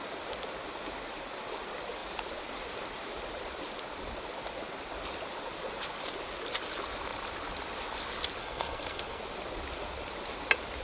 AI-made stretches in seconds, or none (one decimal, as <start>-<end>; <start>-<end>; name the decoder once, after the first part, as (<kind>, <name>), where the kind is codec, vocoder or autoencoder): 8.4-9.2 (codec, SNAC)

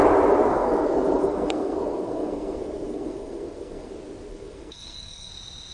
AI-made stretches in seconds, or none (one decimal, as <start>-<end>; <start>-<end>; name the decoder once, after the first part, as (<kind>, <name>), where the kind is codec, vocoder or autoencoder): 0.5-3.9 (codec, SNAC); 4.3-5.3

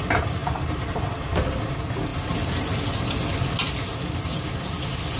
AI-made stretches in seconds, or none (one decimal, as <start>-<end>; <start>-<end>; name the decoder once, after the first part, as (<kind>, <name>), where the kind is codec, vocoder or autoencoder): none